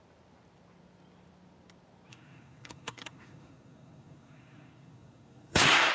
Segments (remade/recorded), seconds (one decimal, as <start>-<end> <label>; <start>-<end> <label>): 0.0-2.1 recorded; 2.1-5.9 remade